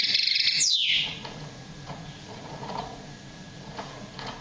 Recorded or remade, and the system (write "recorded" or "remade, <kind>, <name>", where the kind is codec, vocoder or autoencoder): remade, vocoder, Vocos